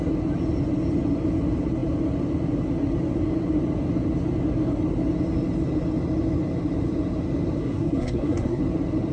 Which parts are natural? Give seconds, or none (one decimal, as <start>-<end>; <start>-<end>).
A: 0.0-7.6; 8.6-9.1